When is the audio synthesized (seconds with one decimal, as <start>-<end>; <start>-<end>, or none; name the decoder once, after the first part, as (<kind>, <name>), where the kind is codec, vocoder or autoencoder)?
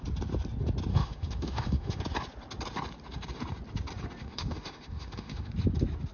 0.9-2.0 (autoencoder, DAC-VAE); 4.2-5.5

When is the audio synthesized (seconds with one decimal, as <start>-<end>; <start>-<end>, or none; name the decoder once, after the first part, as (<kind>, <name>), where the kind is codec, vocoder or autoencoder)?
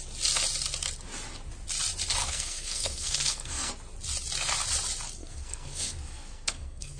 2.2-3.7 (codec, SNAC); 5.2-7.0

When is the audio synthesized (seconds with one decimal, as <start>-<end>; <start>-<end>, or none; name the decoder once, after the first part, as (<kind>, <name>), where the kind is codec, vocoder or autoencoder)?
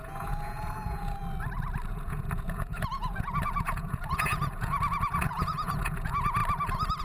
0.0-1.2 (vocoder, Vocos); 1.9-6.4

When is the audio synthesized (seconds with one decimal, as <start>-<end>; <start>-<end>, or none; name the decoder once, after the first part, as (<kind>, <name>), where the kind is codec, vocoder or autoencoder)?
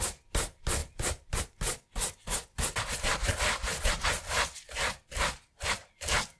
none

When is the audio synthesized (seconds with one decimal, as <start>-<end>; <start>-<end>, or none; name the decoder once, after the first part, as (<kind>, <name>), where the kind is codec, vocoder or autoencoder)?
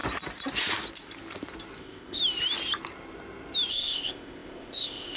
1.8-2.2 (codec, ZipCodec); 3.7-5.2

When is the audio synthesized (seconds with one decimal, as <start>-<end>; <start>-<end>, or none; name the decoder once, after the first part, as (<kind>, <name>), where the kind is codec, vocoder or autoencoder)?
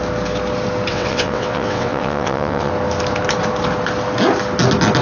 0.9-2.7 (vocoder, WaveNeXt)